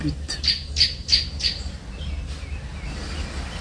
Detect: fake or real real